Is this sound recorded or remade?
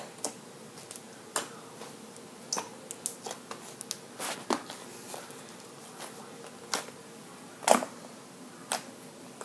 recorded